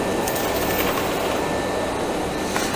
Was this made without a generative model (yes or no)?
yes